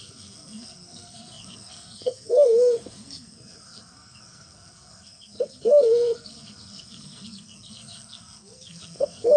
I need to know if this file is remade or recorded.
remade